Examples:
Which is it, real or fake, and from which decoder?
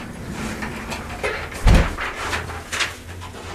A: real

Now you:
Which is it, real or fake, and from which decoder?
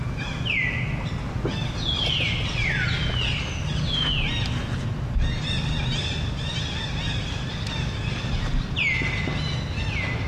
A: real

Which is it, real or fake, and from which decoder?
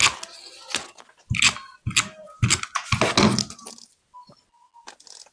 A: real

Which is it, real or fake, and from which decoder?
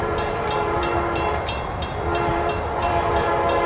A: fake, vocoder, BigVGAN v2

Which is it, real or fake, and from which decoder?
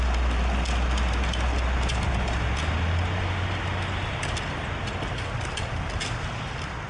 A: real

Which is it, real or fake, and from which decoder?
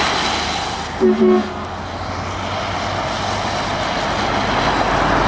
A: real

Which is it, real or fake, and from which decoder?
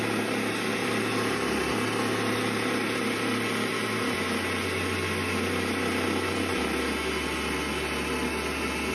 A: real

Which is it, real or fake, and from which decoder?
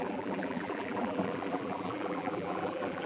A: fake, vocoder, BigVGAN v2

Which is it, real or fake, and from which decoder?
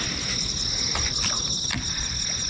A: real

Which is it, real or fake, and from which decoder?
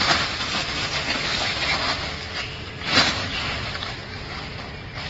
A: real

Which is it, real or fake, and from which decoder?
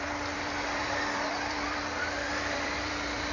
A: fake, vocoder, BigVGAN v2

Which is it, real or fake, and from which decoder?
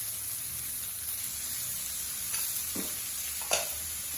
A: real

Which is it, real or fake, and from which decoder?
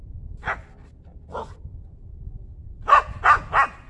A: real